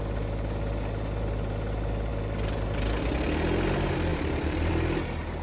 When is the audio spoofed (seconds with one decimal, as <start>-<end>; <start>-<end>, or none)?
4.1-4.7